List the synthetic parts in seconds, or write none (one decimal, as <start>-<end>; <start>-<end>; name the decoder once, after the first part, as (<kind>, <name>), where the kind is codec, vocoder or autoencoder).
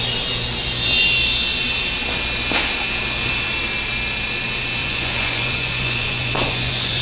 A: 4.8-7.0 (vocoder, Vocos)